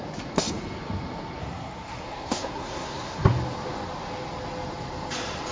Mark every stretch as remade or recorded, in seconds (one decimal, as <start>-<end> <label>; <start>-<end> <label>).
0.0-1.4 recorded; 1.4-3.3 remade; 3.3-5.5 recorded